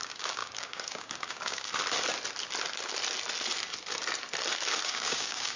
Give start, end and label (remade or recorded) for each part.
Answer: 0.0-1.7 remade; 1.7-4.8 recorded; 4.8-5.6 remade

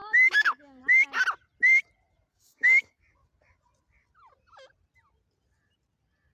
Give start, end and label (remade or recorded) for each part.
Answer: 0.0-0.8 remade; 0.8-2.3 recorded; 2.3-3.0 remade; 3.0-6.3 recorded

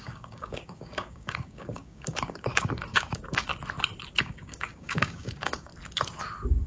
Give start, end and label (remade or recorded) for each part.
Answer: 0.0-3.5 remade; 3.5-4.2 recorded; 4.2-5.7 remade; 5.7-6.7 recorded

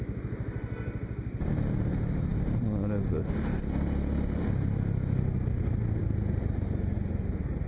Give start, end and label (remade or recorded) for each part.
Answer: 0.0-7.7 recorded

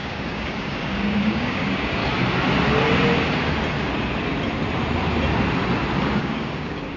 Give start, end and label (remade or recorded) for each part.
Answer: 0.0-2.0 remade; 2.0-6.2 recorded; 6.2-7.0 remade

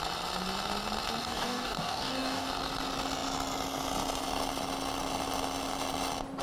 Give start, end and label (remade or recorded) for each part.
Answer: 0.0-1.2 recorded; 1.2-2.5 remade; 2.5-6.4 recorded

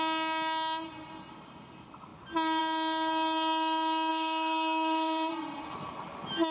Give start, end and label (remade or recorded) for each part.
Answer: 0.0-4.1 recorded; 4.1-5.3 remade; 5.3-6.5 recorded

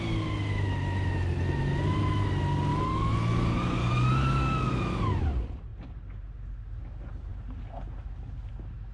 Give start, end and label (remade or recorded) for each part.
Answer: 0.0-2.7 recorded; 2.7-4.7 remade; 4.7-8.9 recorded